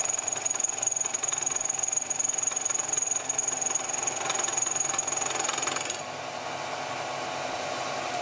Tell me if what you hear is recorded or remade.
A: recorded